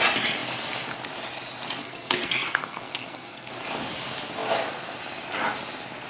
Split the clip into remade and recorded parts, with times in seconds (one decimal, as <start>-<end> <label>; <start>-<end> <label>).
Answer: 0.0-1.8 recorded; 1.8-3.5 remade; 3.5-6.1 recorded